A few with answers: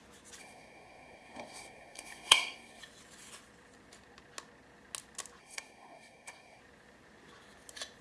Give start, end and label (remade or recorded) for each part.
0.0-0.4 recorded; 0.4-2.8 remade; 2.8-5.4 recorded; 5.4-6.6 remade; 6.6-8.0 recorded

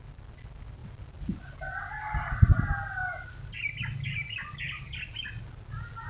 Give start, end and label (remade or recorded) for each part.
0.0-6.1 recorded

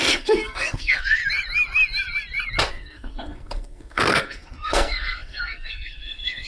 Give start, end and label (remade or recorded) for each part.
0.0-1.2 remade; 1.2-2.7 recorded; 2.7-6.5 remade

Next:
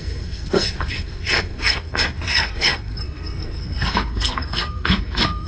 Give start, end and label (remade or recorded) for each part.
0.0-5.5 remade